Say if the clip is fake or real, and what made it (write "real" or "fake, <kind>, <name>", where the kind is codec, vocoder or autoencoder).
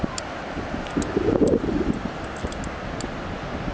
real